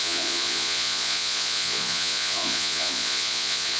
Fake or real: fake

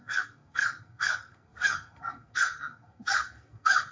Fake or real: fake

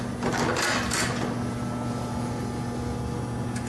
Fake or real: real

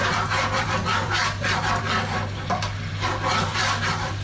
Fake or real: fake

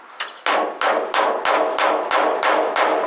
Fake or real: real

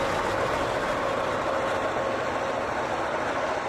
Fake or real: real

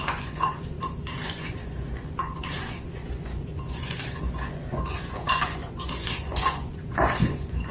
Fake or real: fake